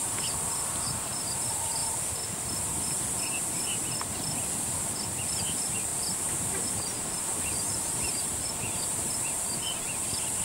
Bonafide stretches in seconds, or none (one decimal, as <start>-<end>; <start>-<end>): 1.8-5.4; 5.9-6.7